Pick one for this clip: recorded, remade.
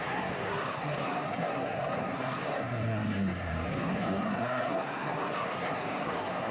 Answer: remade